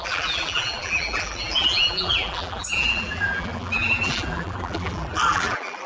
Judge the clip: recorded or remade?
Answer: remade